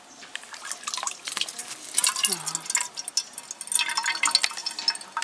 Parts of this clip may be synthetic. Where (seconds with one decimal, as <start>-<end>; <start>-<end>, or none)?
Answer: none